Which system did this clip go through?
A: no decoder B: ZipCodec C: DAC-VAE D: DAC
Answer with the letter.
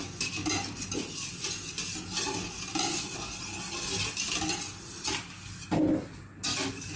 A